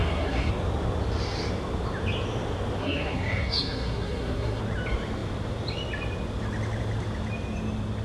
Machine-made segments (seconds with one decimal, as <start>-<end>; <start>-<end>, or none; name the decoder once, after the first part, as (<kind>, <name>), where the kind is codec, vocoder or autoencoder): 0.0-0.5 (codec, SNAC); 2.8-4.6